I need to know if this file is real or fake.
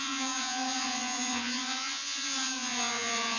fake